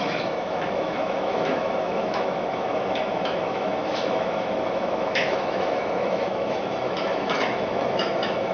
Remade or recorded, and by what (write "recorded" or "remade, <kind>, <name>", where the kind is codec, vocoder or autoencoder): remade, autoencoder, DAC-VAE